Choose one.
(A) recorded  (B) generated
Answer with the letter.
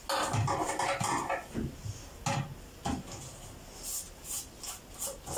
A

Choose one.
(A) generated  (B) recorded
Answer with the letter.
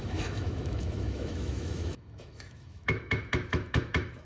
A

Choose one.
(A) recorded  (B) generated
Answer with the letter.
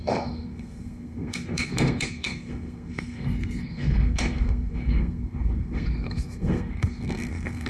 B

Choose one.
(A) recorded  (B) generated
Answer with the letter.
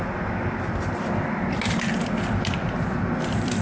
A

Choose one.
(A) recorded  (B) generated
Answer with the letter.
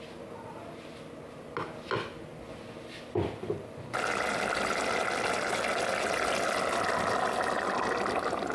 A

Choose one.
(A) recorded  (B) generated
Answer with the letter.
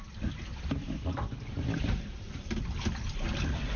A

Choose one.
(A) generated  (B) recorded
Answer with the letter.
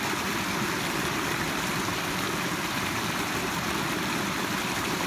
A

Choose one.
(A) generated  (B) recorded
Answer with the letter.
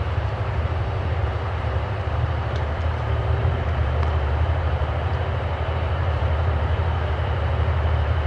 A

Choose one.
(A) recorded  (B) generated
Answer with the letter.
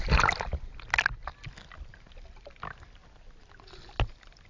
A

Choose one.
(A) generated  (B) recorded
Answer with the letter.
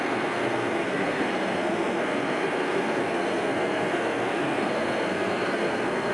A